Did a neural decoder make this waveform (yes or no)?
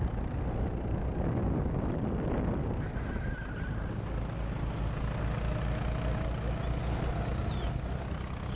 no